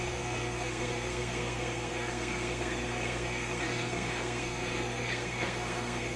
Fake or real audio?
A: fake